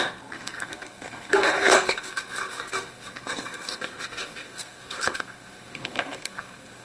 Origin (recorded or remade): remade